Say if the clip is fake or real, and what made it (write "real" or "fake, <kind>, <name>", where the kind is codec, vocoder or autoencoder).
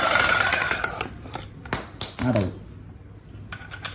real